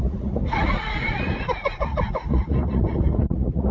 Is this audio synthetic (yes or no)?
yes